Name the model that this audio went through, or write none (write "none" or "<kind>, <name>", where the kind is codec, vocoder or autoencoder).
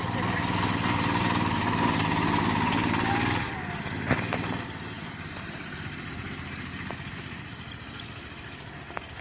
none